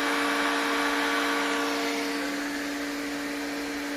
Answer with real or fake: real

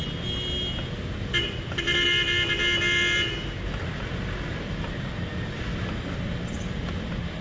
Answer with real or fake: real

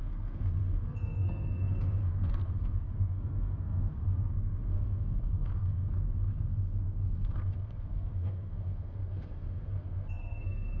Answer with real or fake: fake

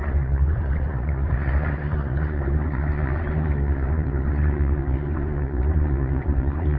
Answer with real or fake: fake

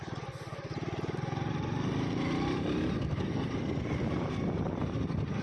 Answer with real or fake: fake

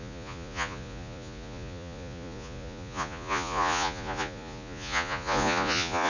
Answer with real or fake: fake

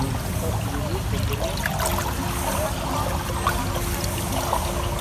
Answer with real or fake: real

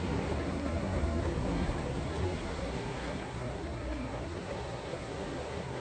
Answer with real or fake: fake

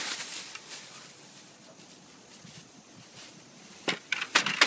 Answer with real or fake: real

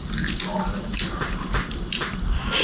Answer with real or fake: real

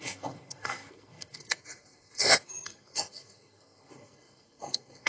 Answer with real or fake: fake